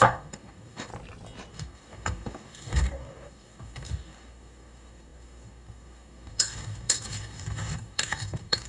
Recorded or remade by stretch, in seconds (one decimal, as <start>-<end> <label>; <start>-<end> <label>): 0.0-0.9 remade; 0.9-1.5 recorded; 1.5-8.7 remade